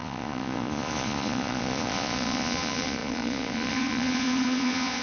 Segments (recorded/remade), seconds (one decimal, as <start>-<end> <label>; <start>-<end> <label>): 0.0-5.0 remade